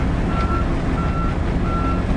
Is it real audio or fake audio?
real